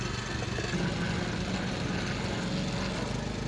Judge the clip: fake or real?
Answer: real